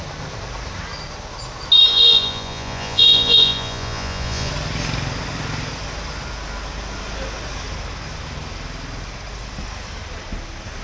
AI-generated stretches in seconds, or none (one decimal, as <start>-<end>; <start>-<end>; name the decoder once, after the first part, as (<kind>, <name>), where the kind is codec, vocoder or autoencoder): 1.9-4.5 (vocoder, Vocos)